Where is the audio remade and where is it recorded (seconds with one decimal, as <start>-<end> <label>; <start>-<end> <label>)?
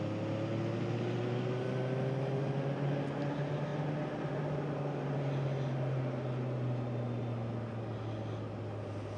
0.0-9.2 recorded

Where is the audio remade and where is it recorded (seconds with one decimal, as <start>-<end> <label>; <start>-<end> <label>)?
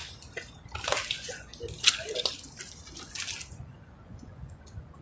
0.0-1.1 recorded; 1.1-1.5 remade; 1.5-3.5 recorded; 3.5-5.0 remade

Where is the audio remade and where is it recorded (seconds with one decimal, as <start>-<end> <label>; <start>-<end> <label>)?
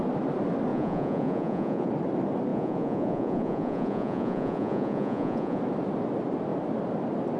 0.0-0.7 recorded; 0.7-1.9 remade; 1.9-2.5 recorded; 2.5-5.6 remade; 5.6-7.4 recorded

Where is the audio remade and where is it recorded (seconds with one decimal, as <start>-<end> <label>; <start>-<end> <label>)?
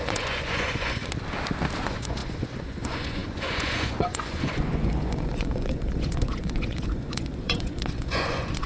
0.0-1.0 remade; 1.0-1.8 recorded; 1.8-8.7 remade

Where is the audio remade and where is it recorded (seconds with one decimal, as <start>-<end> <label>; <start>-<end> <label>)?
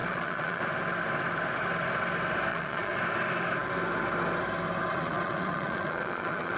0.0-0.6 remade; 0.6-2.5 recorded; 2.5-3.0 remade; 3.0-4.9 recorded; 4.9-6.6 remade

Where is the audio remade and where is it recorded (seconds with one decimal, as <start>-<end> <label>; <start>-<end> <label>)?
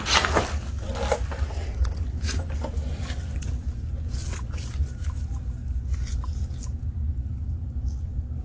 0.0-8.4 recorded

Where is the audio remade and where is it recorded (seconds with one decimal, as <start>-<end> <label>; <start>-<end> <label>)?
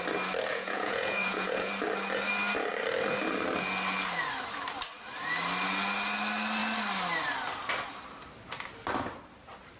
0.0-0.5 recorded; 0.5-1.7 remade; 1.7-9.8 recorded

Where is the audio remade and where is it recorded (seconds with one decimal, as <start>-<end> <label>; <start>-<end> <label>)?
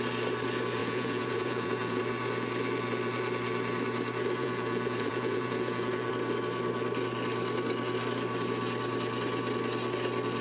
0.0-0.8 recorded; 0.8-2.0 remade; 2.0-4.4 recorded; 4.4-6.1 remade; 6.1-10.4 recorded